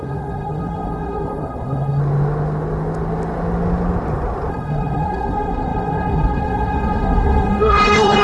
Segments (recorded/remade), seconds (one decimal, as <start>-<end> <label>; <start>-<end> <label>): 0.0-2.0 remade; 2.0-4.5 recorded; 4.5-8.2 remade